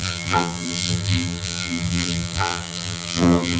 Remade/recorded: remade